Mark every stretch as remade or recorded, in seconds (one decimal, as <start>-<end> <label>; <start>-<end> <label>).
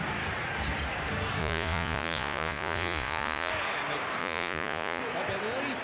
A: 0.0-1.4 recorded; 1.4-3.5 remade; 3.5-4.2 recorded; 4.2-5.0 remade; 5.0-5.8 recorded